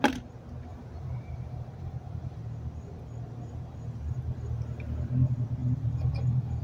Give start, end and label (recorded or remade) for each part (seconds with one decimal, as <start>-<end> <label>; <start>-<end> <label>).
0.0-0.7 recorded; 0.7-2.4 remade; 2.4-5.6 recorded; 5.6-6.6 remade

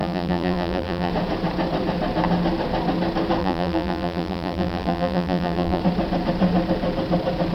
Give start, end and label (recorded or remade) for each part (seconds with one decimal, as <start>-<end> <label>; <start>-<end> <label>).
0.0-1.1 remade; 1.1-3.4 recorded; 3.4-5.8 remade; 5.8-7.5 recorded

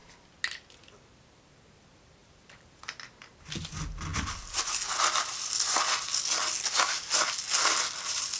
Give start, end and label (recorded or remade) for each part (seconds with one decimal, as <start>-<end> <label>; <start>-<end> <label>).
0.0-2.2 recorded; 2.2-2.9 remade; 2.9-8.4 recorded

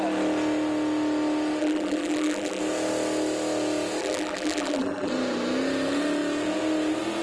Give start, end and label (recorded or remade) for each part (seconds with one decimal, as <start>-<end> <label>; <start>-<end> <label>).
0.0-1.6 recorded; 1.6-2.6 remade; 2.6-4.0 recorded; 4.0-5.1 remade; 5.1-7.2 recorded